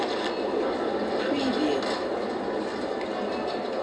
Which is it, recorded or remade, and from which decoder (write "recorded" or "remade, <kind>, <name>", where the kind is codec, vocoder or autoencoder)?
recorded